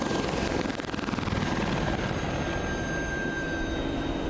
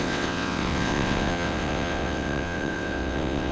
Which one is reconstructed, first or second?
second